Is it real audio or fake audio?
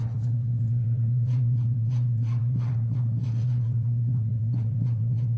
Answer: fake